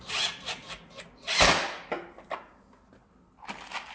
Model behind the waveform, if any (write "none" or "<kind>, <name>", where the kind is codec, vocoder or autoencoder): none